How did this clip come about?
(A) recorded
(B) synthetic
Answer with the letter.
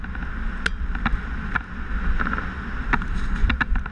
A